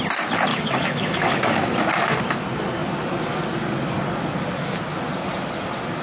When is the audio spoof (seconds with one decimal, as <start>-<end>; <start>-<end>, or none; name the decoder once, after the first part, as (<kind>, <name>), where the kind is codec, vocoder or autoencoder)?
0.5-1.6 (autoencoder, DAC-VAE)